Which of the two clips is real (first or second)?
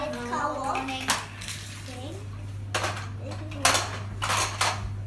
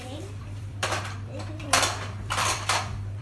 first